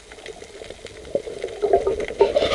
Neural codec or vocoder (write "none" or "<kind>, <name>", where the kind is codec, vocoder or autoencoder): none